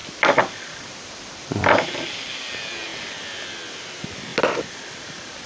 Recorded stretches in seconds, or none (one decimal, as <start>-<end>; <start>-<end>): 0.0-0.5; 4.3-4.9